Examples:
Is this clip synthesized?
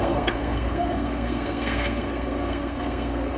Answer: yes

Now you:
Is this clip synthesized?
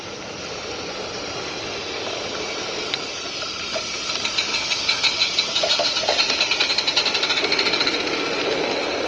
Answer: no